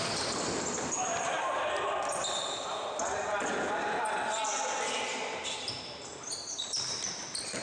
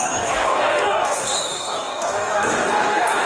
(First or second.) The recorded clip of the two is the first